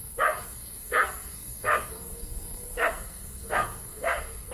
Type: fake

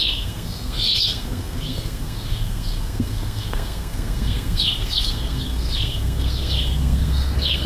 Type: fake